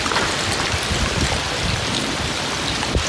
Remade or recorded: recorded